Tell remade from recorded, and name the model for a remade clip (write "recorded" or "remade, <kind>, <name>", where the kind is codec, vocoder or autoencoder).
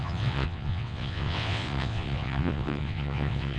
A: remade, vocoder, WaveNeXt